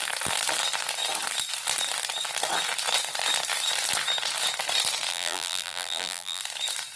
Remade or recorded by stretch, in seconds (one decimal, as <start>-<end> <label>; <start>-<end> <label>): 0.0-5.1 recorded; 5.1-6.4 remade; 6.4-7.0 recorded